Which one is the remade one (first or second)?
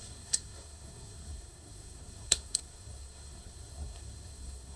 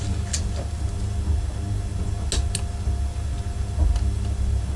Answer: first